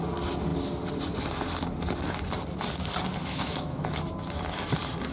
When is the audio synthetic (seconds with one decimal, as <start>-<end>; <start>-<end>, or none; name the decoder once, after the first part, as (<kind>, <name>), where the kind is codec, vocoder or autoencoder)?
3.2-3.8 (autoencoder, DAC-VAE)